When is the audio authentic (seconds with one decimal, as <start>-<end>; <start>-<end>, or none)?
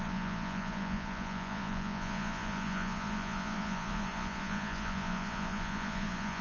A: none